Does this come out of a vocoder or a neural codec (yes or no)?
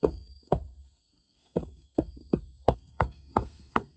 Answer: yes